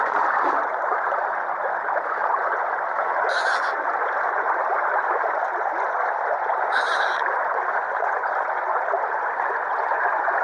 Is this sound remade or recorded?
remade